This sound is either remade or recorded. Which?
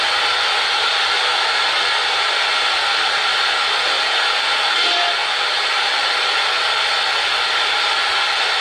recorded